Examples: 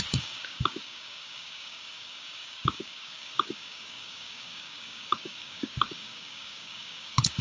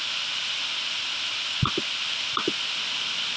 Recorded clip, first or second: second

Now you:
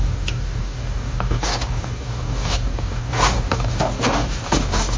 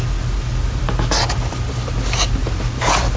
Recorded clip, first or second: second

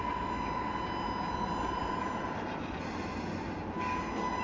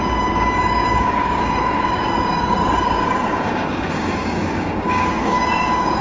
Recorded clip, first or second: first